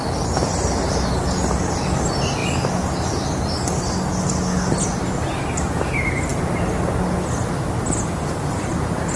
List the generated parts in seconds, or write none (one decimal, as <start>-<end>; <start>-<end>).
none